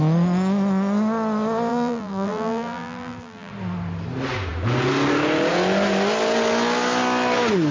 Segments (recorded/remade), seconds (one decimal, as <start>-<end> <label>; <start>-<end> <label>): 0.0-1.7 recorded; 1.7-3.5 remade; 3.5-7.7 recorded